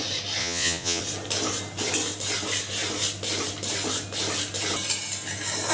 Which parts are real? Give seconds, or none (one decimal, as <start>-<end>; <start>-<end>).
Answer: 0.0-0.4; 1.0-5.7